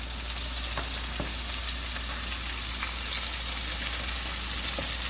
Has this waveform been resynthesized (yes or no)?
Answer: no